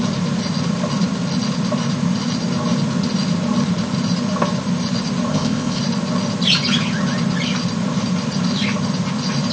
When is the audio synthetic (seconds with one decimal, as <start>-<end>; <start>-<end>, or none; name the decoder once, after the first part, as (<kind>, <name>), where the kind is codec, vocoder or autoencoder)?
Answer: 5.3-5.8 (codec, ZipCodec)